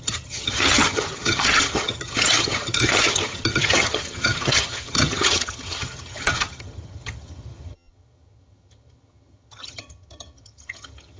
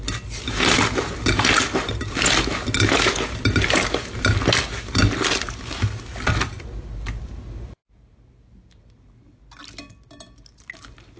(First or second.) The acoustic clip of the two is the second